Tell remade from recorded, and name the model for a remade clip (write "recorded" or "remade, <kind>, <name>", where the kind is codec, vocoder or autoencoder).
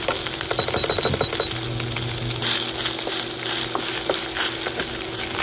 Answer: recorded